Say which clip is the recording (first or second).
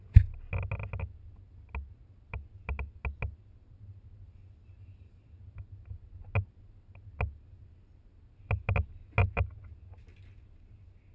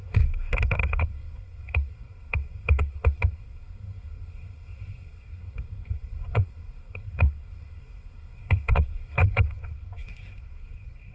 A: first